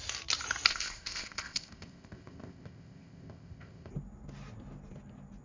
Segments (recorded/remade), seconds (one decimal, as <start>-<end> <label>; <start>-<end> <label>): 0.0-0.7 recorded; 0.7-3.9 remade; 3.9-5.4 recorded